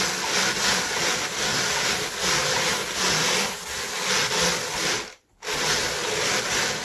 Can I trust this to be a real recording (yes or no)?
yes